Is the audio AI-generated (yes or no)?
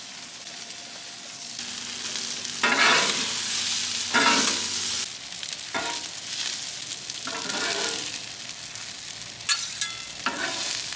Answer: no